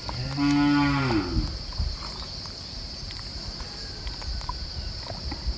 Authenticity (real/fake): real